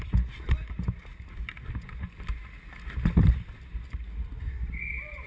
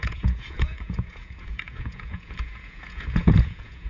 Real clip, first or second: first